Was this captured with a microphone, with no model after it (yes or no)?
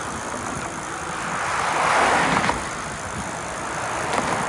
yes